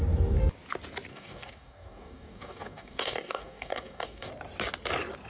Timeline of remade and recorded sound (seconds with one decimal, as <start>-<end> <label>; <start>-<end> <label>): 0.0-1.1 recorded; 1.1-4.3 remade; 4.3-5.3 recorded

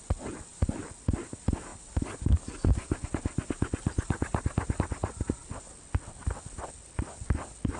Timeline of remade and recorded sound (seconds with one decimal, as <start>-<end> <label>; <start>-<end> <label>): 0.0-7.8 recorded

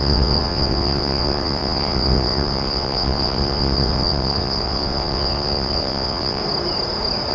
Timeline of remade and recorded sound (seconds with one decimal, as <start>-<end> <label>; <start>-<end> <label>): 0.0-6.4 remade; 6.4-7.3 recorded

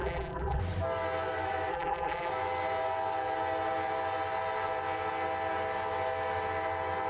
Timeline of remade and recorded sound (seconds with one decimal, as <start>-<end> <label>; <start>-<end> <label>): 0.0-0.6 remade; 0.6-1.7 recorded; 1.7-2.3 remade; 2.3-7.1 recorded

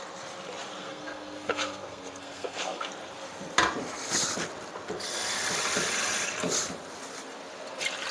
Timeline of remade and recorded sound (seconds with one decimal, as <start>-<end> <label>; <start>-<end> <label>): 0.0-0.8 recorded; 0.8-2.9 remade; 2.9-8.1 recorded

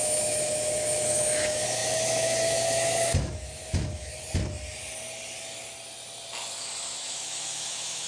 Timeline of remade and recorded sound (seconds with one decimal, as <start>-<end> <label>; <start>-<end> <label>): 0.0-4.1 remade; 4.1-6.6 recorded; 6.6-8.1 remade